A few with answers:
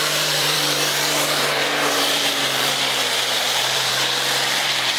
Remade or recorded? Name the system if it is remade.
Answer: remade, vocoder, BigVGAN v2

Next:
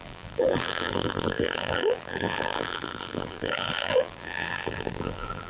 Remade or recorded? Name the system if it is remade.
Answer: remade, vocoder, BigVGAN v2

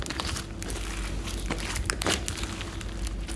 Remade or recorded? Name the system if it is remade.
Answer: recorded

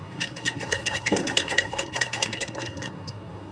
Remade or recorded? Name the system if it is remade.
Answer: remade, codec, SNAC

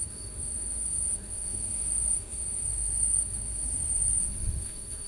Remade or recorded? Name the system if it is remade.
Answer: remade, autoencoder, DAC-VAE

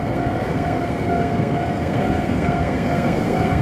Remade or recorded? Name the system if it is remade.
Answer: remade, codec, SNAC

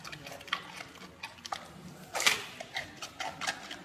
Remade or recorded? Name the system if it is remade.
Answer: recorded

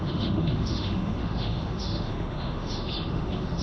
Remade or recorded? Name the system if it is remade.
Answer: remade, autoencoder, DAC-VAE